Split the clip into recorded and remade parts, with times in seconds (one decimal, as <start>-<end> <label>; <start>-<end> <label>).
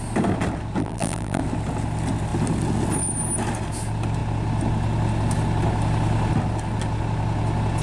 0.0-0.8 recorded; 0.8-1.4 remade; 1.4-7.8 recorded